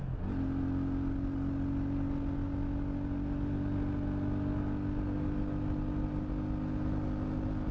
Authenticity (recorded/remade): recorded